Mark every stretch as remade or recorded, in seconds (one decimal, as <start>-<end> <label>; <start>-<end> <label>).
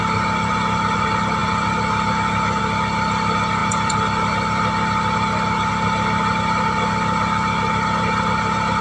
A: 0.0-1.4 remade; 1.4-2.6 recorded; 2.6-8.8 remade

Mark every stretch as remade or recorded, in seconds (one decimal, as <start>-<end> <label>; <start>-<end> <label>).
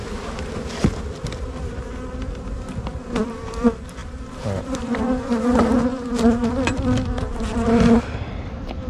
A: 0.0-8.9 remade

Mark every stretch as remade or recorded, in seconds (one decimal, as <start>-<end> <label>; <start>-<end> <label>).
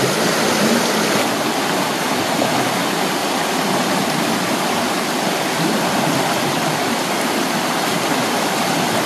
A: 0.0-3.2 recorded; 3.2-6.5 remade; 6.5-9.1 recorded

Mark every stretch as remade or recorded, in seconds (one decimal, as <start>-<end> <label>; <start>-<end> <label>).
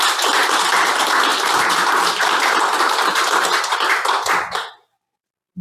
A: 0.0-5.6 remade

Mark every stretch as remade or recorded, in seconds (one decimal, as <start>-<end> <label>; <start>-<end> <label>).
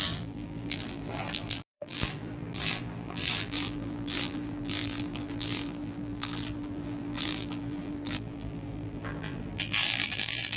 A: 0.0-10.6 remade